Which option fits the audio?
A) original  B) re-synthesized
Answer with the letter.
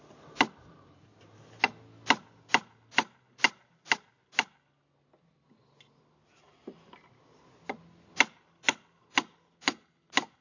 A